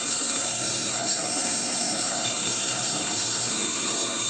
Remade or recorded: remade